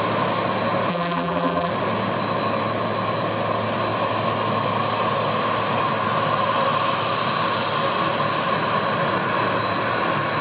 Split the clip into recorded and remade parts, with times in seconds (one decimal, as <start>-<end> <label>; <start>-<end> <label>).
0.0-0.9 recorded; 0.9-1.7 remade; 1.7-10.4 recorded